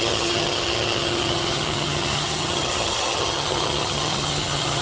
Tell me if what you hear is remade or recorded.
remade